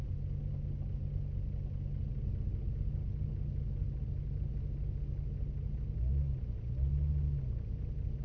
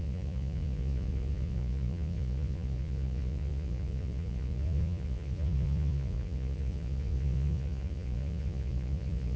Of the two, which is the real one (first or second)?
first